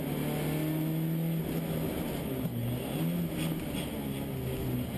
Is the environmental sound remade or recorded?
recorded